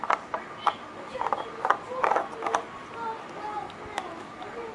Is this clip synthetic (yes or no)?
no